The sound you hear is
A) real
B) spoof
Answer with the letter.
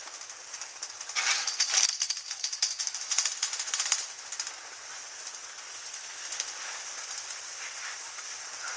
A